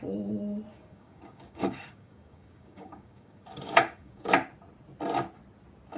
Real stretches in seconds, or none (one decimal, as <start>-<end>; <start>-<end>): 0.0-0.7; 4.3-6.0